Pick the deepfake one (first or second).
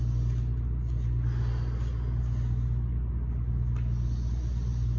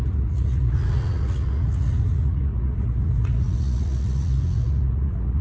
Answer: second